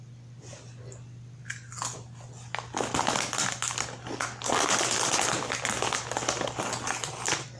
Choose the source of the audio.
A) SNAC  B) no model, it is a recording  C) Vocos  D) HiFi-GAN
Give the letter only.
B